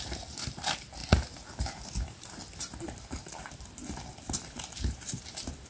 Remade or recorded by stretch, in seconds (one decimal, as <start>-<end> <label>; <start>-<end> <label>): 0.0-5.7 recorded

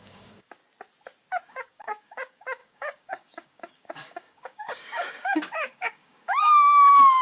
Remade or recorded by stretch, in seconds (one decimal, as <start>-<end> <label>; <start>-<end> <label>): 0.0-0.6 remade; 0.6-1.5 recorded; 1.5-7.2 remade

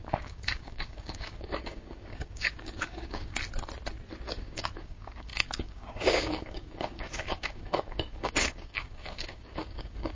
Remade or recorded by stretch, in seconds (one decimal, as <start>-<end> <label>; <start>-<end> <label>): 0.0-3.4 remade; 3.4-4.4 recorded; 4.4-10.2 remade

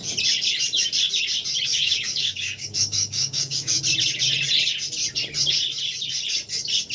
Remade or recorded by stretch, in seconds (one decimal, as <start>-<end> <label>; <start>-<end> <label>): 0.0-1.7 recorded; 1.7-3.8 remade; 3.8-6.9 recorded